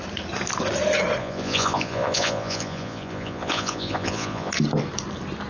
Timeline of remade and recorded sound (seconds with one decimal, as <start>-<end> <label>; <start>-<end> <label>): 0.0-1.2 recorded; 1.2-4.5 remade; 4.5-5.5 recorded